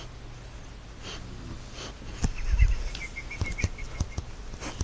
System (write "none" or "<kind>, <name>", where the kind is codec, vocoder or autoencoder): none